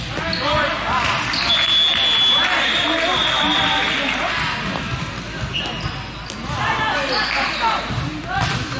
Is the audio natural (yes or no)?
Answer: yes